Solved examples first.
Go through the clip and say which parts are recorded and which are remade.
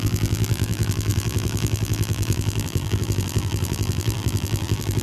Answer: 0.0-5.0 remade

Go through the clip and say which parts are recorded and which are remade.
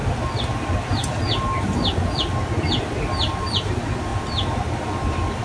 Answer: 0.0-5.4 recorded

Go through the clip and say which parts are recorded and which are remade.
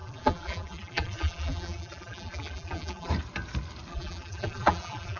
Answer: 0.0-3.1 remade; 3.1-3.9 recorded; 3.9-5.2 remade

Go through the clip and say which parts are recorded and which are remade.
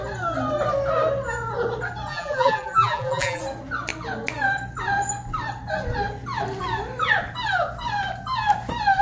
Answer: 0.0-2.1 recorded; 2.1-3.4 remade; 3.4-9.0 recorded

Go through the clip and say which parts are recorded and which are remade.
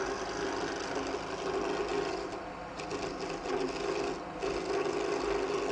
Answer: 0.0-1.9 recorded; 1.9-5.3 remade; 5.3-5.7 recorded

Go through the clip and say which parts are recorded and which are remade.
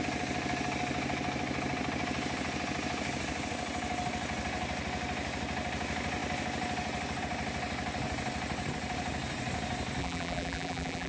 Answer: 0.0-10.0 recorded; 10.0-11.1 remade